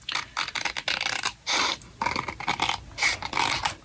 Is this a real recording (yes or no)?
yes